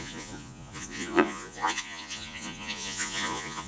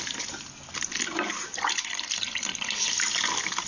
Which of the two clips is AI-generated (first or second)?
first